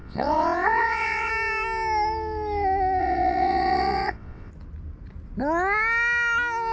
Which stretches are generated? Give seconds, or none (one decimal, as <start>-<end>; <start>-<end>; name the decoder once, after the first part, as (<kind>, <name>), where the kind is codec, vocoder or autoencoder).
0.0-1.3 (vocoder, WaveNeXt); 3.0-4.5